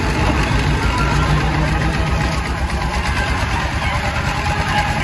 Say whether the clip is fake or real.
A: real